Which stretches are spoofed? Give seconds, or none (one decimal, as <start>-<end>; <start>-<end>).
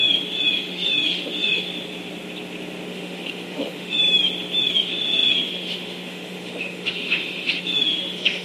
0.0-1.7; 2.9-4.0; 4.6-8.4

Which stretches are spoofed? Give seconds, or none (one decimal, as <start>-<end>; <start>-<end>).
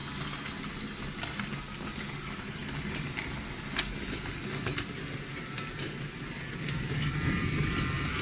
none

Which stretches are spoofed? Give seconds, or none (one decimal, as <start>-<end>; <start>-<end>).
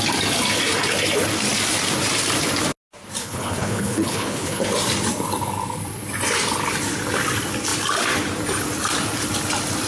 3.2-4.7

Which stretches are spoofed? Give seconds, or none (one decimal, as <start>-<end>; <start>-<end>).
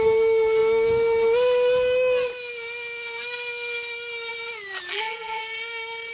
4.9-5.4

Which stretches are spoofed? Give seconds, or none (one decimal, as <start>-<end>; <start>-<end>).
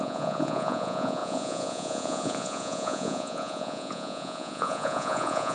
0.0-5.5